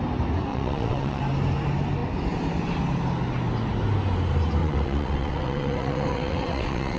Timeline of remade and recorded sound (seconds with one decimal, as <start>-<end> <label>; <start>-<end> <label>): 0.0-0.5 recorded; 0.5-1.2 remade; 1.2-4.6 recorded; 4.6-7.0 remade